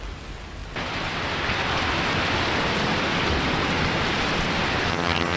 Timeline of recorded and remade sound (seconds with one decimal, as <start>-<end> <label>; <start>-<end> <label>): 0.0-4.9 recorded; 4.9-5.4 remade